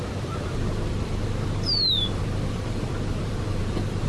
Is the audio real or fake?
fake